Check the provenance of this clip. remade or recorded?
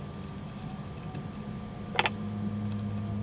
recorded